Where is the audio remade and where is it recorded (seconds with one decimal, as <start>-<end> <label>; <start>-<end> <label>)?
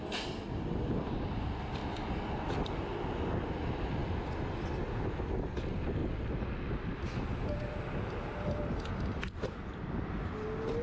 0.0-10.8 recorded